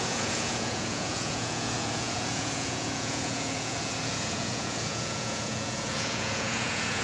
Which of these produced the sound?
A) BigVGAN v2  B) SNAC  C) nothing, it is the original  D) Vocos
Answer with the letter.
D